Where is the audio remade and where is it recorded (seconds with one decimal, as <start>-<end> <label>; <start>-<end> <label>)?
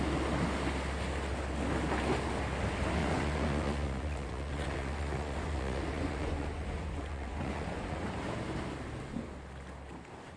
0.0-3.0 recorded; 3.0-8.0 remade; 8.0-10.4 recorded